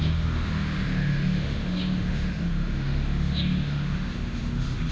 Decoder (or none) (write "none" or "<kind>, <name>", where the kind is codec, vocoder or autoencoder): autoencoder, DAC-VAE